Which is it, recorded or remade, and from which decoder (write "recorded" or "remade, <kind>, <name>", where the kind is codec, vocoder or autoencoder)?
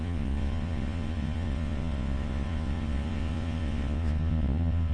remade, vocoder, Vocos